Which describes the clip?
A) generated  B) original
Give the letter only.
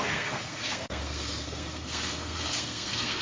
A